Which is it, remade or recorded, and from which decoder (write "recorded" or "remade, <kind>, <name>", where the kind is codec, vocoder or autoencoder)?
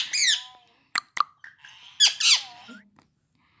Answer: recorded